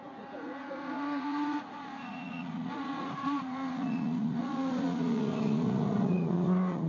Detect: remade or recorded remade